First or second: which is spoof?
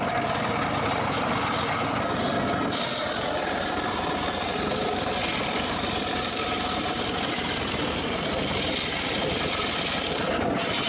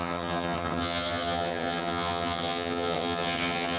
second